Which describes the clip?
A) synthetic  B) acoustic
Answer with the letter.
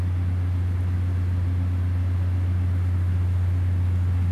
B